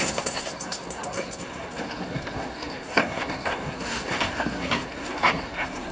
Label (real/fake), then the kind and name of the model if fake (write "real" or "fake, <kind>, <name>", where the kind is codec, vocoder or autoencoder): fake, codec, SNAC